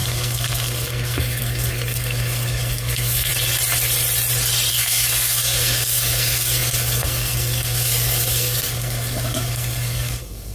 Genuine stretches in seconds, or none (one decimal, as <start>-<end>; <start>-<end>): 3.3-4.7